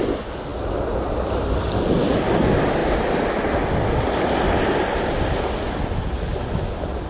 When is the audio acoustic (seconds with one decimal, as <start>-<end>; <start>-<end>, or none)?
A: 0.0-7.1

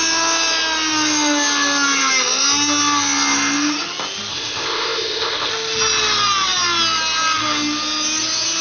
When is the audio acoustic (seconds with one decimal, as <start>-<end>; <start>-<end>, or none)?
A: 0.0-4.3; 5.5-8.6

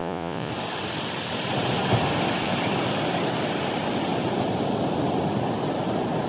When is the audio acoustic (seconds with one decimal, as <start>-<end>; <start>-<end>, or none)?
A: 0.5-6.3

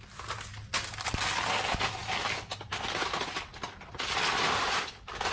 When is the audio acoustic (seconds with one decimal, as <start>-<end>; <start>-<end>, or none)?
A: 0.0-5.3

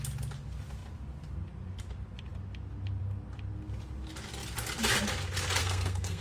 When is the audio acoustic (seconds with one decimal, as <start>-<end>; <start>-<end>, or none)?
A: 0.0-5.6